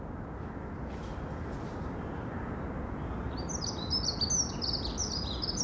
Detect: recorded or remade recorded